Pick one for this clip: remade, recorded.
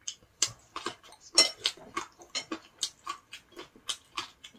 recorded